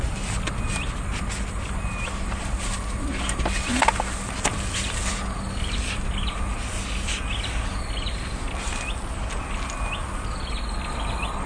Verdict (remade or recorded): recorded